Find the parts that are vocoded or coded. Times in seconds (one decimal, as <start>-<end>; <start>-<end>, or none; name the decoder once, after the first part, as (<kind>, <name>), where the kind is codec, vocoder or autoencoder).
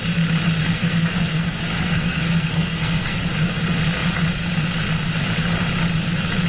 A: 0.6-3.2 (codec, SNAC)